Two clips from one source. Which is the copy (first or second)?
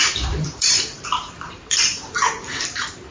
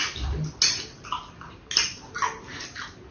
first